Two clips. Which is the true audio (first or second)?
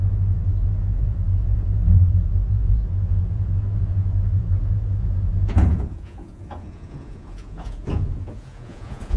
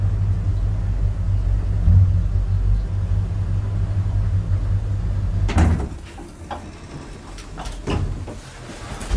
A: second